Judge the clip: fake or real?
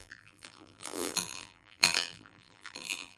fake